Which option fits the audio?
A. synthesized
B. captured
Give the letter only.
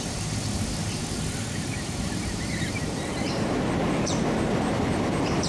A